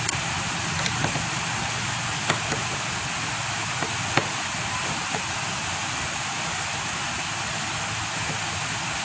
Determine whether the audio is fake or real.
real